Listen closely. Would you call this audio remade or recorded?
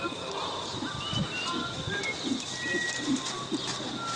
recorded